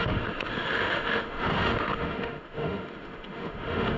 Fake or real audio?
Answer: fake